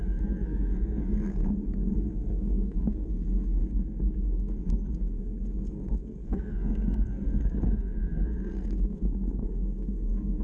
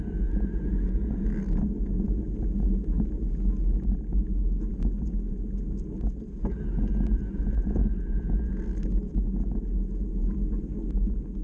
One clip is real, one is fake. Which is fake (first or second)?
first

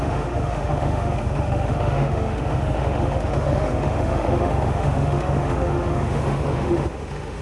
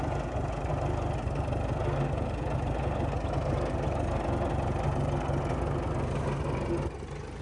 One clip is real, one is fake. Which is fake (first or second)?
first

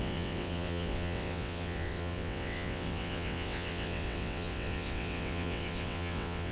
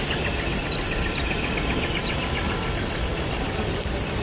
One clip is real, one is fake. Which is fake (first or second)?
first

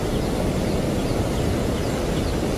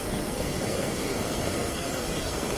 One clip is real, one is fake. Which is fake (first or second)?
second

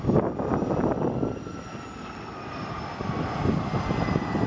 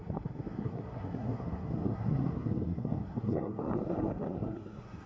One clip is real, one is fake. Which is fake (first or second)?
second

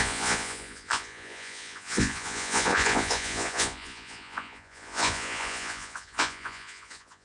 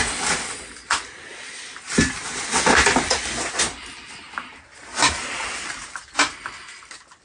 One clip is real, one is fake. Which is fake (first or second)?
first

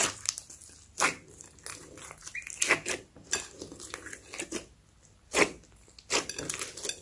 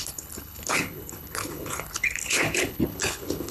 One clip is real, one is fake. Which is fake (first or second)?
second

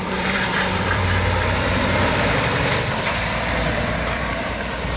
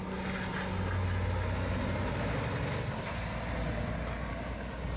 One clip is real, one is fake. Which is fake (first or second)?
first